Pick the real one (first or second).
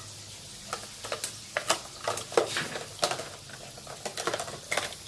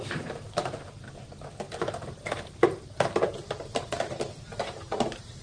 first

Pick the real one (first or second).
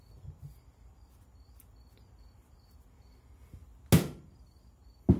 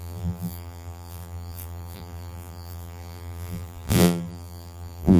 first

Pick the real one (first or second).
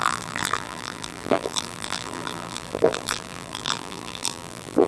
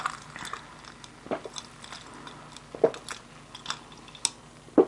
second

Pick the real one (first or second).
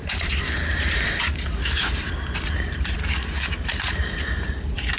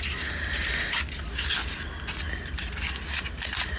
second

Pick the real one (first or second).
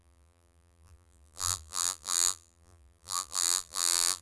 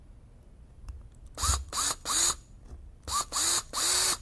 second